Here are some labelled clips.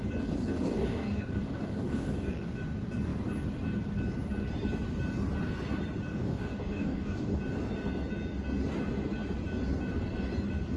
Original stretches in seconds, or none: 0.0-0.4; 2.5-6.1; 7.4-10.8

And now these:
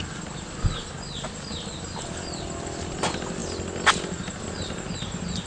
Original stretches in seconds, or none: 0.0-5.5

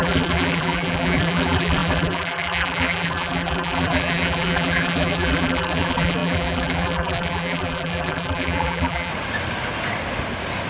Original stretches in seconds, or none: 9.1-10.7